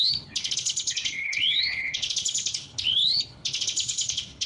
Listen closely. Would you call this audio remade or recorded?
remade